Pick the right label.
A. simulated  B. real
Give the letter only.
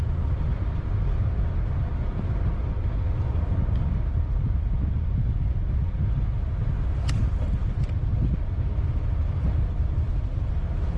B